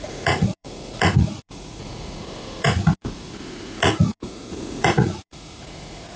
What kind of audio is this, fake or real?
fake